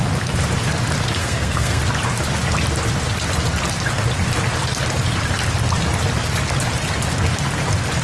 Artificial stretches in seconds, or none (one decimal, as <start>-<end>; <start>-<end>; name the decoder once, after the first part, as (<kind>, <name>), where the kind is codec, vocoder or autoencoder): 1.2-1.8 (codec, SNAC)